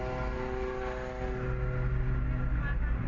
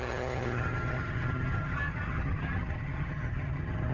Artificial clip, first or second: second